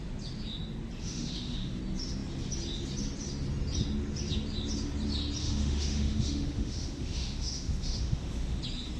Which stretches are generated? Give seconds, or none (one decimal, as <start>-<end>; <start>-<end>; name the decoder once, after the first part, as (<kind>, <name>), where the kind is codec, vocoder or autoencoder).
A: 1.0-1.8 (autoencoder, DAC-VAE); 5.4-8.6